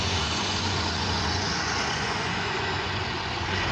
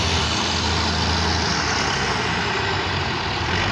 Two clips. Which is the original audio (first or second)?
second